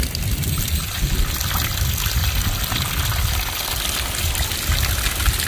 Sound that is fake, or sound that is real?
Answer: real